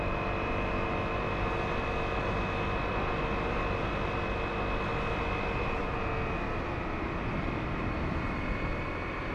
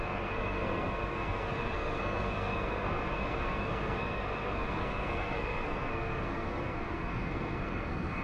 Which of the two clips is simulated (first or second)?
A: second